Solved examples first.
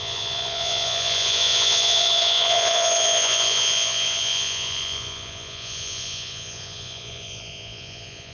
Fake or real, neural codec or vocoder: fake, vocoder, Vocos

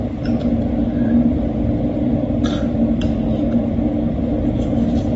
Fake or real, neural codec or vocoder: real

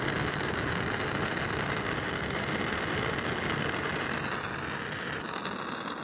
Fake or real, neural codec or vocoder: real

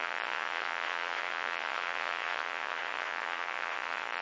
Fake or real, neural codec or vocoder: fake, vocoder, Vocos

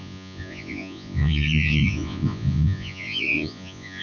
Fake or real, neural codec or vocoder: fake, vocoder, Vocos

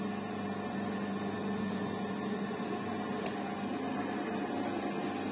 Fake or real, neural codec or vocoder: real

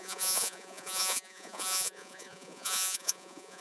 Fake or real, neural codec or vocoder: fake, vocoder, Vocos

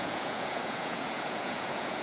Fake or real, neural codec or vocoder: fake, vocoder, Vocos